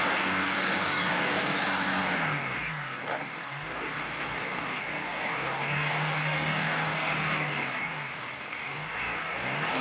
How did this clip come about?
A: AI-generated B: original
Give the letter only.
A